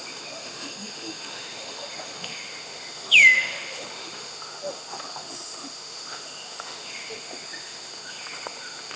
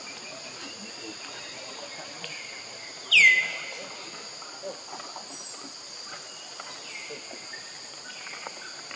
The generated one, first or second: first